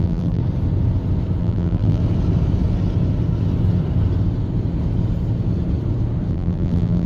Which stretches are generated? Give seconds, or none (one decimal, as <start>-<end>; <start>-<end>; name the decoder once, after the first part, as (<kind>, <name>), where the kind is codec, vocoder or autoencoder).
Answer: 0.0-0.4 (vocoder, BigVGAN v2); 1.4-2.0; 6.3-7.1